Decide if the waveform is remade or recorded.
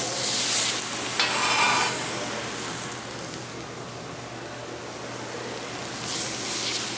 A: recorded